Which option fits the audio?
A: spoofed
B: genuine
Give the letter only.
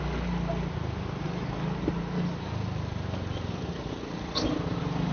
B